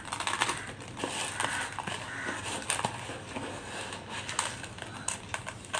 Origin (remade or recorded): recorded